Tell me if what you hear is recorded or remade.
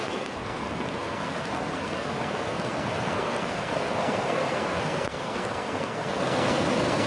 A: remade